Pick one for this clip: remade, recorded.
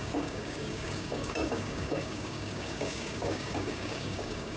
remade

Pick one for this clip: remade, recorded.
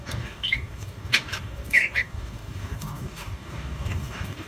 remade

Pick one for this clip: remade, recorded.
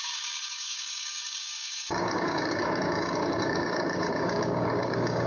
remade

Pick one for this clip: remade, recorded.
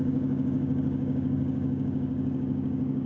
remade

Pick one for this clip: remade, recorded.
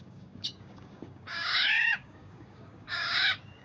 remade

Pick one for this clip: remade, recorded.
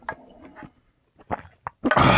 recorded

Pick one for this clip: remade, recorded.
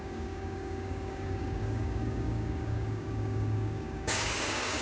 remade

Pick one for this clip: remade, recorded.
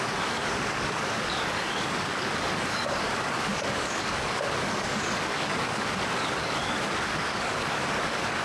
remade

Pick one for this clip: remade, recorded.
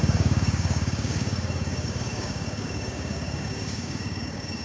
remade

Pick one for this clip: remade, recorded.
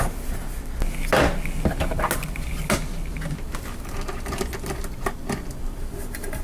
recorded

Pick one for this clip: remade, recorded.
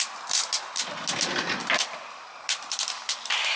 recorded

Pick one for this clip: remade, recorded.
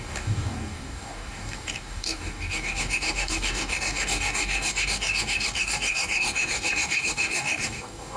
remade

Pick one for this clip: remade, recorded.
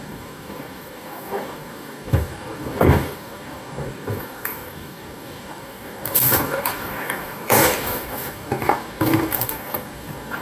remade